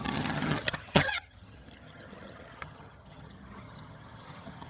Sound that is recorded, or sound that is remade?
remade